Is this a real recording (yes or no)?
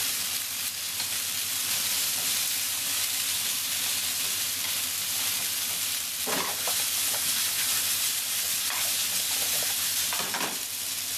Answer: no